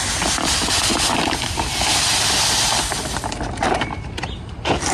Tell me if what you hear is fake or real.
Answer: real